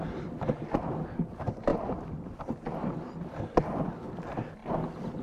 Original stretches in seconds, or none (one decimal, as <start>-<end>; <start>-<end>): 0.0-1.7; 3.4-4.6

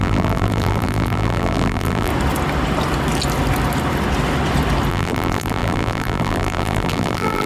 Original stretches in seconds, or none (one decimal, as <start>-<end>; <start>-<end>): 2.1-4.9

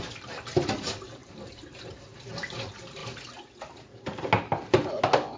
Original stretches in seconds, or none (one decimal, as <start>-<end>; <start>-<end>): 0.0-1.2; 2.3-5.4

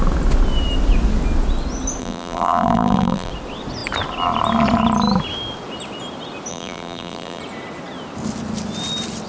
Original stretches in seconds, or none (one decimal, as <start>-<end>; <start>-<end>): 0.0-2.0; 3.3-6.5; 7.4-9.3

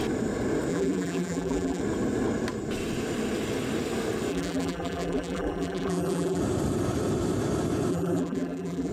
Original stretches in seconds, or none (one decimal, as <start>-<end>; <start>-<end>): 0.0-0.7; 1.8-4.3; 6.4-7.9

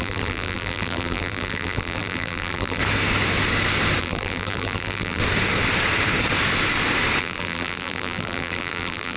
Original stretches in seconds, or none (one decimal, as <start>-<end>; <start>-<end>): 2.8-4.0; 5.2-7.2